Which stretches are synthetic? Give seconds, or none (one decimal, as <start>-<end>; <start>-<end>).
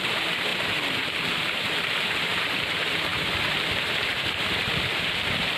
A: 0.0-5.6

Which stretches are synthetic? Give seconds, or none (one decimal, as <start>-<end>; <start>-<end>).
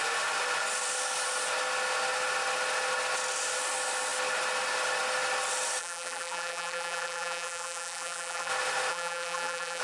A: 5.8-8.5; 8.9-9.8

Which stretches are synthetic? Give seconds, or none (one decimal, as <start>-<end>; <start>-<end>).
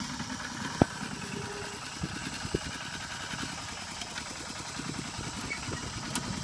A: none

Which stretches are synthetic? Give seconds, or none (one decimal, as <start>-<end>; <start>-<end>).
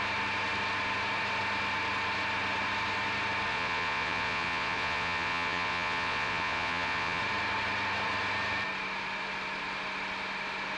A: 3.5-7.2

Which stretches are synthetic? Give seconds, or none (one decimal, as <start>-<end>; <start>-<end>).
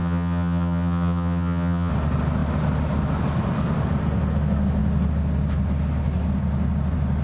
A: 0.0-1.9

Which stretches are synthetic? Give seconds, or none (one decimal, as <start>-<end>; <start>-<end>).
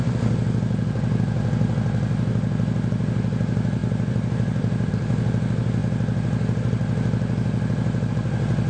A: 3.8-4.9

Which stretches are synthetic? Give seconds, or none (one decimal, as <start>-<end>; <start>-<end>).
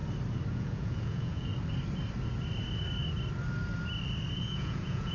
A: 0.5-1.5; 4.4-5.1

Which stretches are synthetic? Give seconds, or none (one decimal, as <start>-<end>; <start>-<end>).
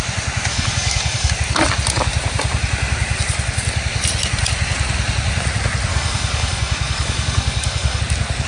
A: 0.5-1.3; 5.9-8.0